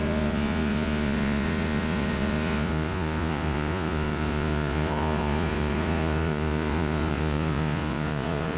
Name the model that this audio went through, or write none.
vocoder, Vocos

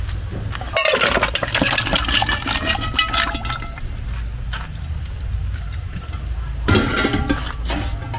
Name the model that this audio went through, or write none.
none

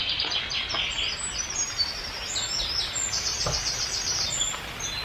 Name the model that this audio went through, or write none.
none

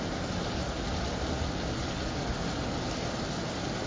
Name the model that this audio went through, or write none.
none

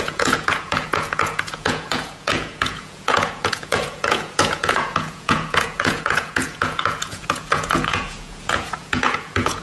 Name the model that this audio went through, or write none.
vocoder, Vocos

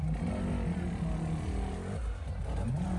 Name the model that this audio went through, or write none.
none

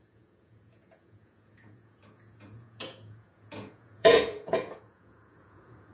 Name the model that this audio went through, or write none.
vocoder, Vocos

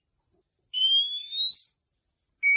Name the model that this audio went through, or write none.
none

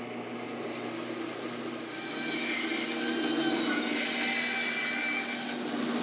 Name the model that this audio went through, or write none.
none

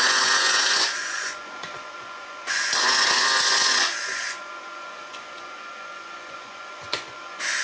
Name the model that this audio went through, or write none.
vocoder, Vocos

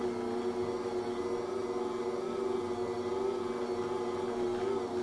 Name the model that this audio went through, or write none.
none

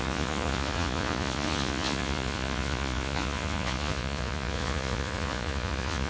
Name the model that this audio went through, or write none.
vocoder, Vocos